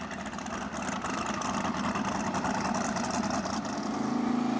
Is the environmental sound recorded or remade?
recorded